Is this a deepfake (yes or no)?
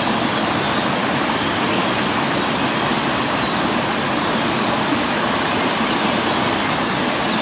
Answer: no